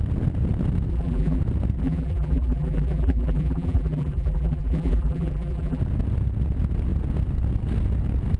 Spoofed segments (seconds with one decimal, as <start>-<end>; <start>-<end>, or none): 0.9-1.4; 1.8-5.8